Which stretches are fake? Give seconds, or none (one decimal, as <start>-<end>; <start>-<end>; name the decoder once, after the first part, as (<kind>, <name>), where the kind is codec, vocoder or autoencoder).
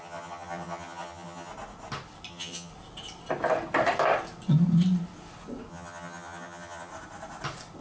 0.0-1.5 (vocoder, HiFi-GAN); 2.3-2.7; 5.7-6.9